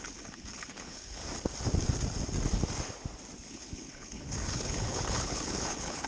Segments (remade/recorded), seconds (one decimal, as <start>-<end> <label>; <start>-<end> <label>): 0.0-1.2 remade; 1.2-3.5 recorded; 3.5-6.1 remade